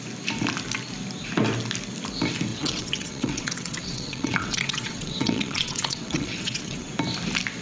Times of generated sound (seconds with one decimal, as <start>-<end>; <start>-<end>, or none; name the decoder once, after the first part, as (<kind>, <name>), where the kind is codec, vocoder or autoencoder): 2.5-6.9 (vocoder, WaveNeXt)